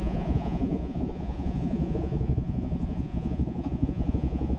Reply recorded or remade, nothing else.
remade